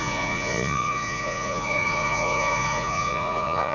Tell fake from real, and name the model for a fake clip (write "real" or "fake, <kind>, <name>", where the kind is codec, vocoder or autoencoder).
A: fake, vocoder, Vocos